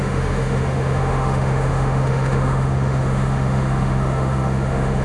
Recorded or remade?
remade